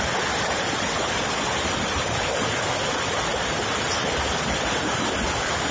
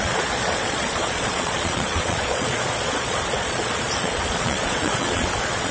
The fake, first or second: second